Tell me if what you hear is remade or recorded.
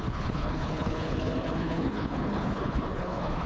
remade